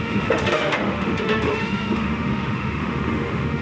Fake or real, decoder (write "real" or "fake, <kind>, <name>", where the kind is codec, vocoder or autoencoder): fake, autoencoder, DAC-VAE